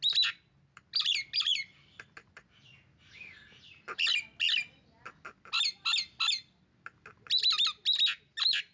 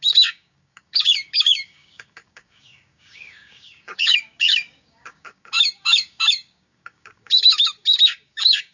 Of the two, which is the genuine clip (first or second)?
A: first